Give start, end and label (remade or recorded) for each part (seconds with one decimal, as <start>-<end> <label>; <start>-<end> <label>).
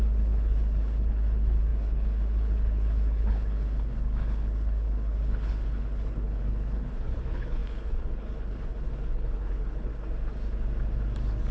0.0-9.9 remade; 9.9-11.5 recorded